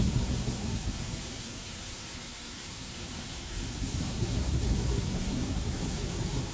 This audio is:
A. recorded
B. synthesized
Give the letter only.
B